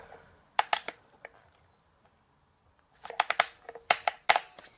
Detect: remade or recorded recorded